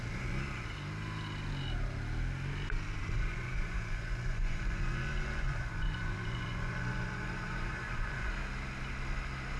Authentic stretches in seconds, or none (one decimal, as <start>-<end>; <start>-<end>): 0.0-3.2; 8.3-9.6